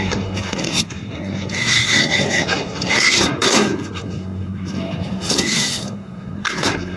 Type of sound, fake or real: fake